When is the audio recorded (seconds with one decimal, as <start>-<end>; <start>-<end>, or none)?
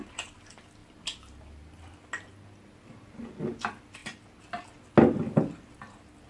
0.0-0.8; 1.7-6.3